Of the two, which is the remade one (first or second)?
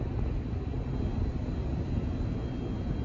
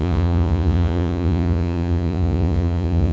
second